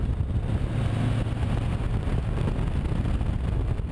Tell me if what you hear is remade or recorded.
recorded